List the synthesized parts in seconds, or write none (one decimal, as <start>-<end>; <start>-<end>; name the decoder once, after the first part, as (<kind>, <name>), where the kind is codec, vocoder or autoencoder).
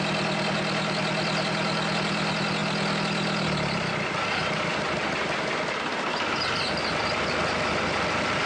none